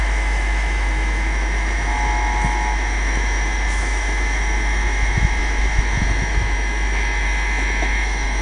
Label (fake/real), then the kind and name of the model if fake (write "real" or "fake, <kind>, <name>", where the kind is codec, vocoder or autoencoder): fake, autoencoder, DAC-VAE